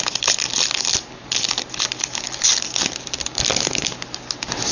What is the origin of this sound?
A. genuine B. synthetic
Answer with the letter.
A